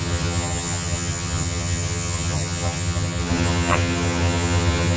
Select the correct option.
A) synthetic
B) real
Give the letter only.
A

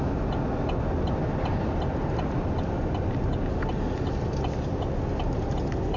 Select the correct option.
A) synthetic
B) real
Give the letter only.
B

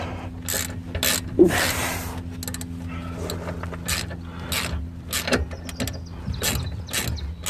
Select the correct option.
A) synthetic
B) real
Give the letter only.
B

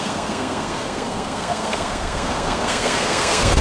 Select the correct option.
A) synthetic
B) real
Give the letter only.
A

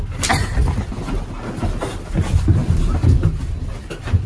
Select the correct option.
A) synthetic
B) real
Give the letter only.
B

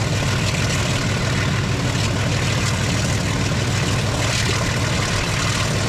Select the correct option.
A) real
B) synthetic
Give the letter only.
A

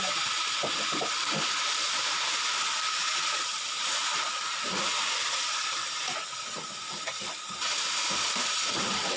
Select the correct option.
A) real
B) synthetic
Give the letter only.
A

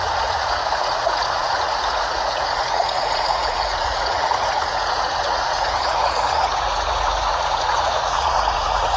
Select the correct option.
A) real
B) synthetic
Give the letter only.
B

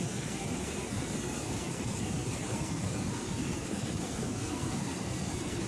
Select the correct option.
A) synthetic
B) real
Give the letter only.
A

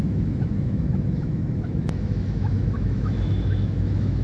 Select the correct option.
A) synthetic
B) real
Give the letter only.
A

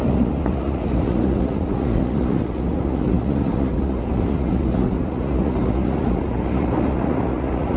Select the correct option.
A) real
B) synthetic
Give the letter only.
B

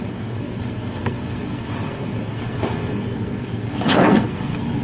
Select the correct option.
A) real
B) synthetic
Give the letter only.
B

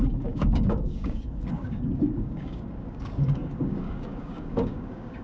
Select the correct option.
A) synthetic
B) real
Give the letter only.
A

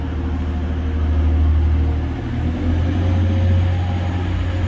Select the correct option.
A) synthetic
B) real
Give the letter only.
B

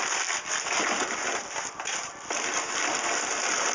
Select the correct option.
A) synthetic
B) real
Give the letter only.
B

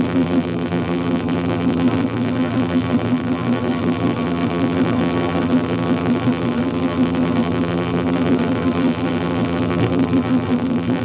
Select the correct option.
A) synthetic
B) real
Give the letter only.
A